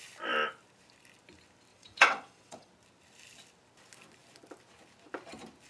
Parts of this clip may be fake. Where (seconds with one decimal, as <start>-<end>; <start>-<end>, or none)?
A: 1.7-2.7